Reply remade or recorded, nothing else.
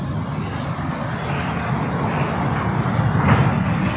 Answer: recorded